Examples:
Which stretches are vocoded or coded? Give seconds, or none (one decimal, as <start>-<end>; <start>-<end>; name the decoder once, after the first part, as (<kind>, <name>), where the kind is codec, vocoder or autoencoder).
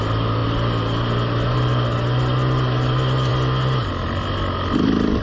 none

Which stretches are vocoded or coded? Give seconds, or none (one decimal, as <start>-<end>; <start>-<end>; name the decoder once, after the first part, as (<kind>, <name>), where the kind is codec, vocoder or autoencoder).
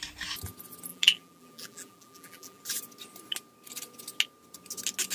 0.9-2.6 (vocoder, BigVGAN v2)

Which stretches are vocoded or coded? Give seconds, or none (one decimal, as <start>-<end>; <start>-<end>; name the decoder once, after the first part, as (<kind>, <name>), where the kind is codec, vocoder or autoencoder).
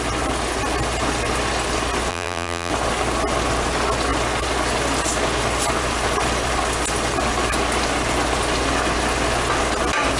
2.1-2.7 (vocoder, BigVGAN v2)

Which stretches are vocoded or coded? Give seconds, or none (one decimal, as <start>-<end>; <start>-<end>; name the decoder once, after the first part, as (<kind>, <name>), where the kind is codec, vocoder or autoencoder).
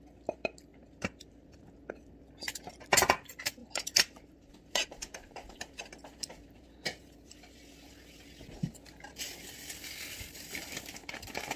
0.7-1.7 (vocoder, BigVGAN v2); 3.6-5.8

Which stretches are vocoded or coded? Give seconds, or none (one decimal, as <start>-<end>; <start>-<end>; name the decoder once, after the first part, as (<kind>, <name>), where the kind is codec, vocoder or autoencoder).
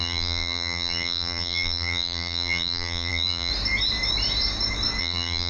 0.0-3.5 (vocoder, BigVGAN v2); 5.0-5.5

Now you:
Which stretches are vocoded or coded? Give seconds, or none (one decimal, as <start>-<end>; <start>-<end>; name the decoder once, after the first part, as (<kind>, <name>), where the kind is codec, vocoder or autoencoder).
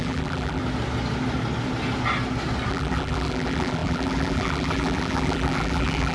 0.0-0.6 (vocoder, BigVGAN v2); 2.7-6.1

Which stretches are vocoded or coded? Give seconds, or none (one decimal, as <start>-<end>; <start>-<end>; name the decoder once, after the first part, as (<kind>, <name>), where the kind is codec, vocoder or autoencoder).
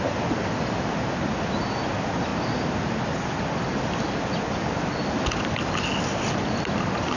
none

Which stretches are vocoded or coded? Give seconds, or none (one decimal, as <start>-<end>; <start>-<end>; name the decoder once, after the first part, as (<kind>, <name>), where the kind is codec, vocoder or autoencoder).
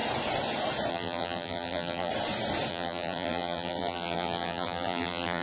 0.9-2.1 (vocoder, BigVGAN v2); 2.7-5.4